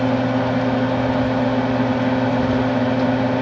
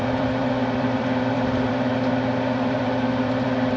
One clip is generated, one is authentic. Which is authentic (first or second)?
first